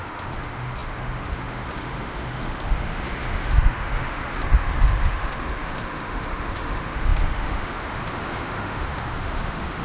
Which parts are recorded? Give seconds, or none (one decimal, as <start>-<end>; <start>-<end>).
none